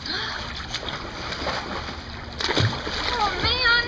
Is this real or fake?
real